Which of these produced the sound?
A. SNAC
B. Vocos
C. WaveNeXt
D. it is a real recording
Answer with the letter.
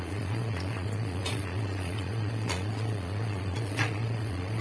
B